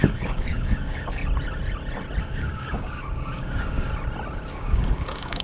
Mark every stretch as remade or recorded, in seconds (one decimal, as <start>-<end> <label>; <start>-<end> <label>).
0.0-1.2 remade; 1.2-2.2 recorded; 2.2-3.9 remade; 3.9-4.5 recorded; 4.5-5.4 remade